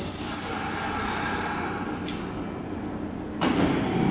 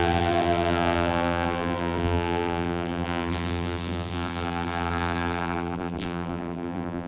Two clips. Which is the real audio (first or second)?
first